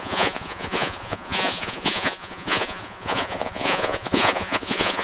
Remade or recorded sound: remade